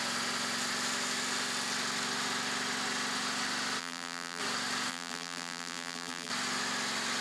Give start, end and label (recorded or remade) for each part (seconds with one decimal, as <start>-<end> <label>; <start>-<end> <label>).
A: 0.0-3.8 recorded; 3.8-4.4 remade; 4.4-4.9 recorded; 4.9-6.3 remade; 6.3-7.2 recorded